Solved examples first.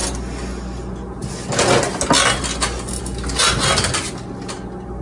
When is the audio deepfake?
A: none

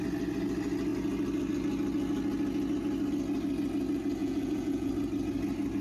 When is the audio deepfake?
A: 4.2-4.9

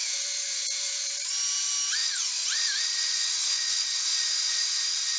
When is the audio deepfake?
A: 0.0-1.3; 2.0-5.2

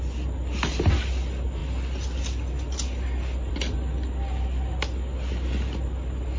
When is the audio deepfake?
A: none